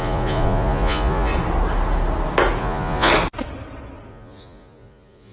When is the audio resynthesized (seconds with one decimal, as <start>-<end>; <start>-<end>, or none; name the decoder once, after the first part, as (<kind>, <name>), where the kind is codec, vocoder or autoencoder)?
0.0-1.3 (vocoder, Vocos); 2.6-3.1; 4.1-5.3